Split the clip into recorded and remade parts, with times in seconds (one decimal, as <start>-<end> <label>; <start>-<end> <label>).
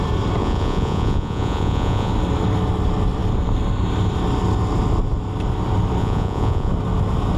0.0-0.4 recorded; 0.4-2.1 remade; 2.1-6.0 recorded; 6.0-6.7 remade; 6.7-7.4 recorded